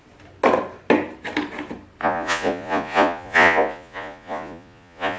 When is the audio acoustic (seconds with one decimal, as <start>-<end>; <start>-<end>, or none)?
0.0-2.0